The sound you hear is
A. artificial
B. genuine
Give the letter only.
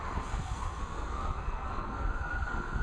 A